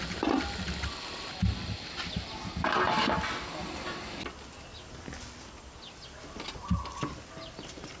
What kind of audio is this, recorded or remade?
recorded